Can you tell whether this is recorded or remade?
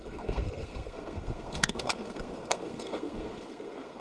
remade